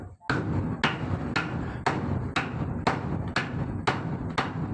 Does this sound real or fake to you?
real